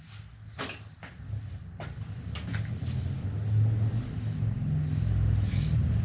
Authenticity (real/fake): real